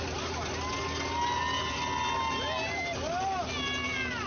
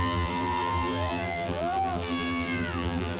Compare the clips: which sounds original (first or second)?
first